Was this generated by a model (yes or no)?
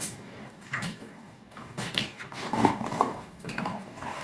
yes